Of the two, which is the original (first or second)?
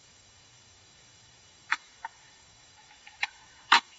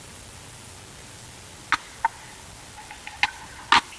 second